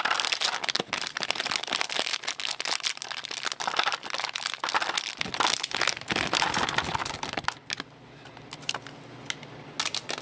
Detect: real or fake real